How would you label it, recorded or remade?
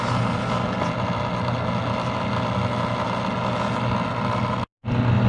recorded